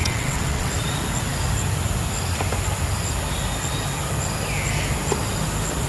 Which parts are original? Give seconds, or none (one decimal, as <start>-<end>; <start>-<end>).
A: 0.7-5.9